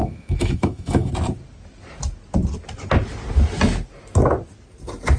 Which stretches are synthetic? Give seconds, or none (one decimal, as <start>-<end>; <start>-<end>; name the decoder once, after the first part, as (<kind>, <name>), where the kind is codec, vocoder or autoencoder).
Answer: 0.0-1.1 (autoencoder, DAC-VAE)